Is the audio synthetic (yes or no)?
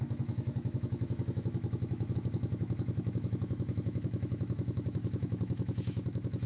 yes